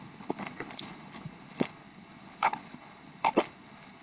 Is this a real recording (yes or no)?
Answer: no